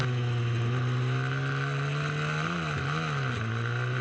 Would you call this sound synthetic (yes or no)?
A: no